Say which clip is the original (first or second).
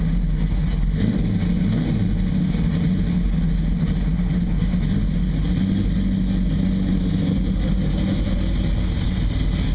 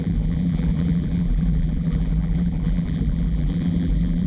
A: first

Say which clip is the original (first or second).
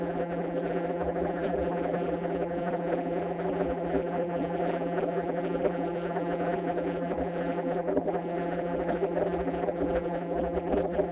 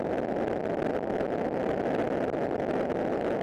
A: second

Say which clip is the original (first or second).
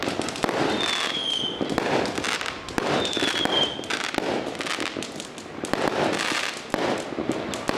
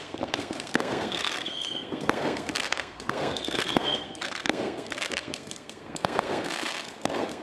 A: first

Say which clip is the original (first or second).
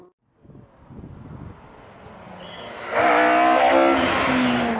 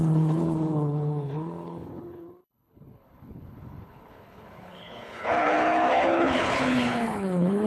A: first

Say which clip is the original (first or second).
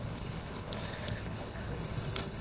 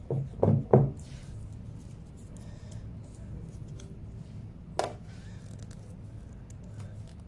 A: second